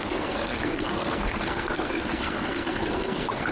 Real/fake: fake